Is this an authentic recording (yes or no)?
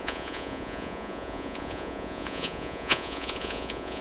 no